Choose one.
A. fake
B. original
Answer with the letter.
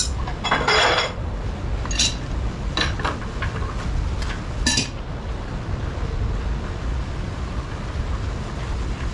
B